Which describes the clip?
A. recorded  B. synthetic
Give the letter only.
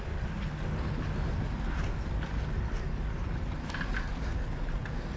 A